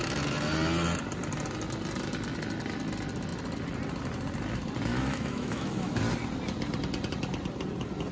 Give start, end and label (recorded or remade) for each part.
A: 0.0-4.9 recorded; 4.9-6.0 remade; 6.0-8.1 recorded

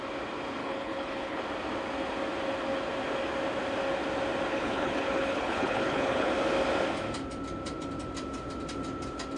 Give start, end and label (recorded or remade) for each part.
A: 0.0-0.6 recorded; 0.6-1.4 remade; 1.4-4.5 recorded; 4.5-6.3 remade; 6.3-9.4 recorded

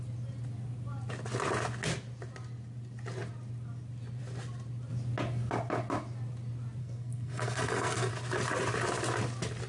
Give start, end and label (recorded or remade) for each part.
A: 0.0-6.8 recorded; 6.8-8.1 remade; 8.1-9.7 recorded